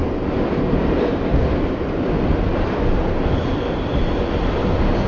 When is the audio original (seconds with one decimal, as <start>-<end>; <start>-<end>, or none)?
0.0-5.1